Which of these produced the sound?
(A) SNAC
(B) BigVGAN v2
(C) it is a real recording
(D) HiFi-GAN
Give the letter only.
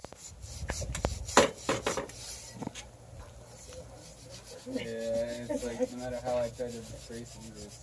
C